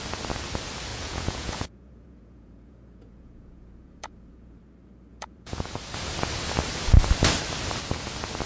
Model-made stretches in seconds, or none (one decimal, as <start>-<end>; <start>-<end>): 0.9-4.6; 5.1-5.7